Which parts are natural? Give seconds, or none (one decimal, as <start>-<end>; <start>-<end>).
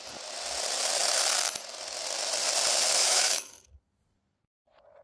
0.0-3.0; 3.5-5.0